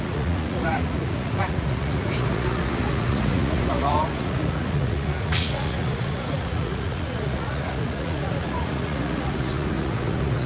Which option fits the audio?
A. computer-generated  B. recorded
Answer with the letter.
A